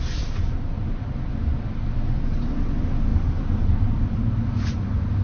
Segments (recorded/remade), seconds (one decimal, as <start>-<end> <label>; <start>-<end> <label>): 0.0-3.1 recorded; 3.1-4.7 remade; 4.7-5.2 recorded